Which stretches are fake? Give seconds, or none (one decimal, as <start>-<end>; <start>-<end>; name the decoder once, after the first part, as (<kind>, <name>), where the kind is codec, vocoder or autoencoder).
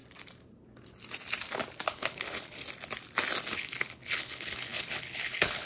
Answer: 1.9-2.6 (codec, HILCodec); 3.5-5.7